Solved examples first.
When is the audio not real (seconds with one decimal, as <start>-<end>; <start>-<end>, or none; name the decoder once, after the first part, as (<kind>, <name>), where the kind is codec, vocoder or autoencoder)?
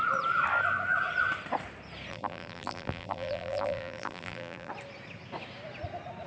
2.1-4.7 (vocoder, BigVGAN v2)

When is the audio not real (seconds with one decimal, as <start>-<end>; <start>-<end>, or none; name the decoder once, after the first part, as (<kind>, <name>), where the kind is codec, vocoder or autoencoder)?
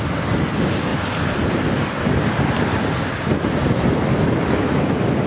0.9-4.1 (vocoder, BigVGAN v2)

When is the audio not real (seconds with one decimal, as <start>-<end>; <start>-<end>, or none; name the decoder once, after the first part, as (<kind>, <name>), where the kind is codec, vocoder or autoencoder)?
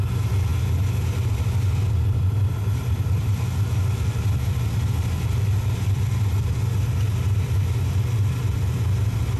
0.0-9.4 (vocoder, BigVGAN v2)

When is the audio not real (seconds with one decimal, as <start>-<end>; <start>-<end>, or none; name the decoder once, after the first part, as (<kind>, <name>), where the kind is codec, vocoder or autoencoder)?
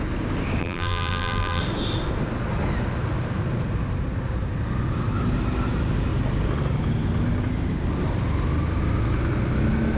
0.6-1.6 (vocoder, BigVGAN v2)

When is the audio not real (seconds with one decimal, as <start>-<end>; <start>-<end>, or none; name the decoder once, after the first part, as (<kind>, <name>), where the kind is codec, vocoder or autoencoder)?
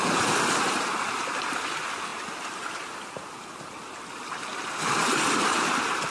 none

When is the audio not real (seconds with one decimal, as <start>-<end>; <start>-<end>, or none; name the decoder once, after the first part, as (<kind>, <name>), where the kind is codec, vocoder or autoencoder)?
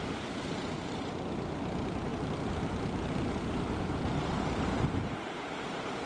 2.1-6.1 (vocoder, BigVGAN v2)